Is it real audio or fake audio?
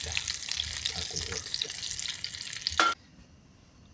real